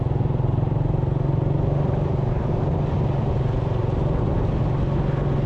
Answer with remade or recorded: recorded